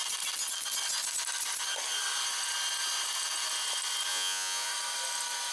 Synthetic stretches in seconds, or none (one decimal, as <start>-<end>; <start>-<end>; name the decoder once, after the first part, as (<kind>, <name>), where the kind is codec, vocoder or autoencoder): 4.1-4.7 (vocoder, Vocos)